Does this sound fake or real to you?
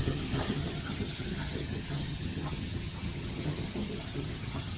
fake